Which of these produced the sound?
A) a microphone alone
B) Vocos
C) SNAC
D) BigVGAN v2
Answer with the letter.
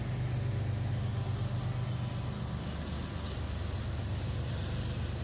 A